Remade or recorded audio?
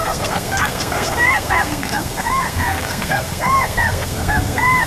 remade